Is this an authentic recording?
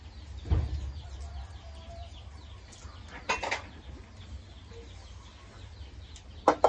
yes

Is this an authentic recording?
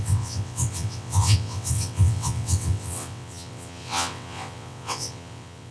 no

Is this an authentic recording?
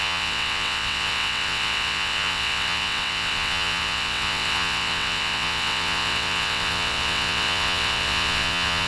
no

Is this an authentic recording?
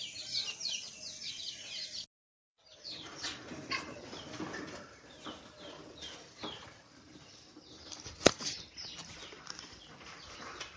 yes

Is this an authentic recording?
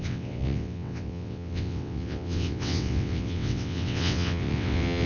no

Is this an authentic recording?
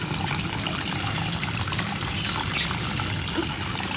yes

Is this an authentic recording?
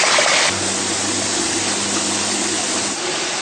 yes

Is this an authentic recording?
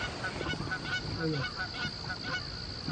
yes